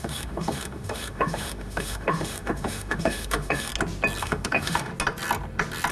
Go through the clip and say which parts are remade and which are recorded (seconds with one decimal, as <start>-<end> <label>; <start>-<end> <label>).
0.0-3.7 remade; 3.7-4.2 recorded; 4.2-4.9 remade; 4.9-5.9 recorded